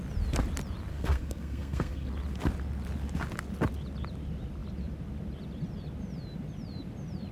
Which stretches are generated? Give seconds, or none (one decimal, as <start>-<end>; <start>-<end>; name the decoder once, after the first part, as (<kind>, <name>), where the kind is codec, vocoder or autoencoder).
0.9-2.1 (codec, SNAC)